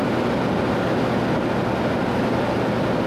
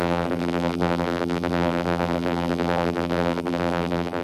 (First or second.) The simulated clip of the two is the second